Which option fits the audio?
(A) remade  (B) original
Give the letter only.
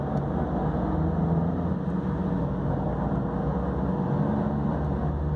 B